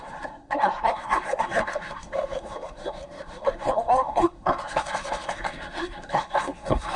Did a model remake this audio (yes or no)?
yes